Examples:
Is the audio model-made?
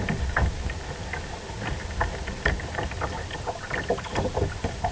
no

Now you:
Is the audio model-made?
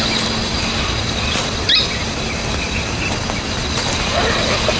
no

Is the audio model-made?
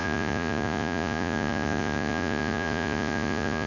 yes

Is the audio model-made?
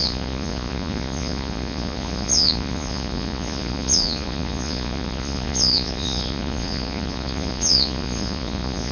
yes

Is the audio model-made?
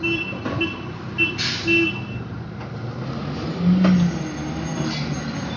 no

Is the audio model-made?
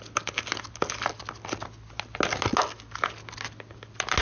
no